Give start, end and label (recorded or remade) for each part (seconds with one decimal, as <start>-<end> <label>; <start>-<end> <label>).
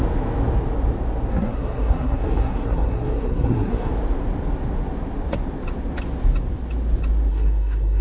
0.0-1.3 recorded; 1.3-3.9 remade; 3.9-7.3 recorded; 7.3-8.0 remade